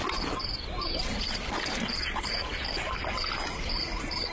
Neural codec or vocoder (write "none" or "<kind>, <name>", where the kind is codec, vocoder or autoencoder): none